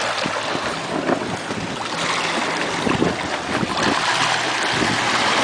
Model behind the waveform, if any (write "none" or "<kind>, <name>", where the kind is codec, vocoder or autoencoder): none